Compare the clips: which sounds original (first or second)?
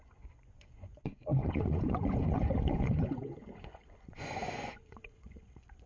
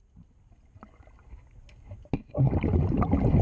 second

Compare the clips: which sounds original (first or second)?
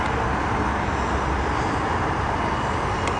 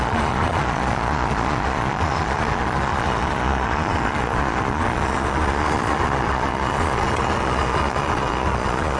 first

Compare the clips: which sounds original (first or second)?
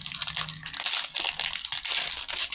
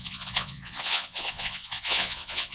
first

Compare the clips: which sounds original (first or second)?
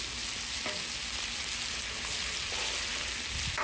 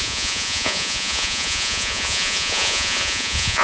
first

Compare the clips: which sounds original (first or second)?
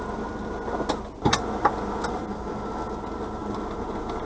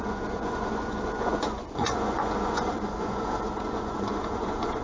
first